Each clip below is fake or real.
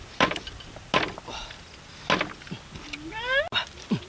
real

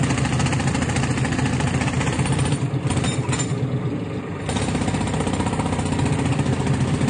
real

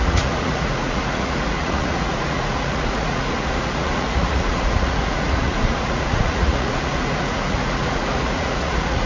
fake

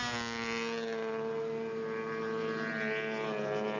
real